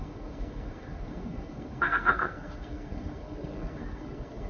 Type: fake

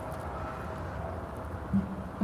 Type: real